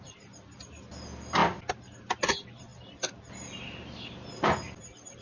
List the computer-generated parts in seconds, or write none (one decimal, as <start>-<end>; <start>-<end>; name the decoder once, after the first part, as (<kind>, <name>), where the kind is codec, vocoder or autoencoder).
none